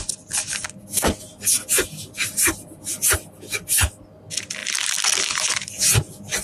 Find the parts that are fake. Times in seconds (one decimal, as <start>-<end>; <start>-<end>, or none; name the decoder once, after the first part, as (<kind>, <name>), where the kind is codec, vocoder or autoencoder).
none

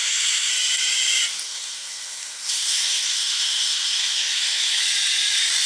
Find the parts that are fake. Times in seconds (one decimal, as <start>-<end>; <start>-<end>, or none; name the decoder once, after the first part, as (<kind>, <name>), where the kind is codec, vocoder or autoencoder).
0.0-0.5 (codec, SNAC); 1.4-4.8

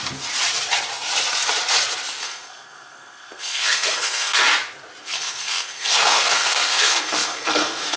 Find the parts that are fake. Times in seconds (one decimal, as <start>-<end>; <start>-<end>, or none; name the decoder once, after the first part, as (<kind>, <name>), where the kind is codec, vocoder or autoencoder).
2.2-4.4 (codec, SNAC); 5.0-8.0

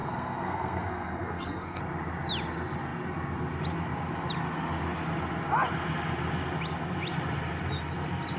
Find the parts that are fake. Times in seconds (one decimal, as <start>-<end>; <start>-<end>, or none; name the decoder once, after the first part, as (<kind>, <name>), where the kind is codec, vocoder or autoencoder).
0.0-1.8 (codec, SNAC)

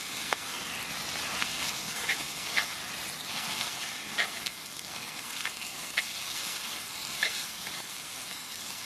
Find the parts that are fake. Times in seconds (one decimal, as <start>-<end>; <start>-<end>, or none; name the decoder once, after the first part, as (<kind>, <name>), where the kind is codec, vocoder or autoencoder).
0.0-0.7 (codec, SNAC); 1.4-2.8; 3.3-8.8